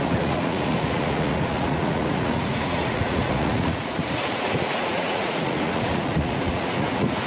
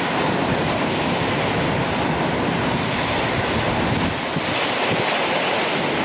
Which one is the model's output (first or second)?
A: first